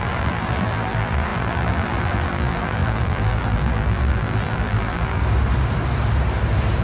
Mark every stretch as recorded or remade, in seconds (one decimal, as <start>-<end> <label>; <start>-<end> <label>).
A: 0.0-5.2 remade; 5.2-6.8 recorded